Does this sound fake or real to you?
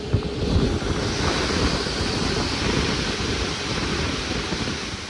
real